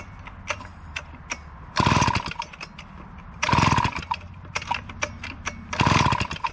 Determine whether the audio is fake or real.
real